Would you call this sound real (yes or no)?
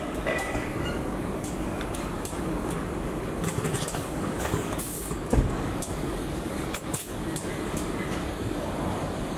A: no